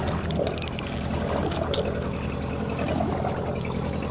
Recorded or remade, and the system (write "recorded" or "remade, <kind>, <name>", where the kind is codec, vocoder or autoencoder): recorded